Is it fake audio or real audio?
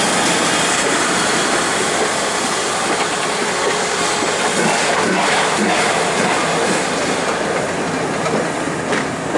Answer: real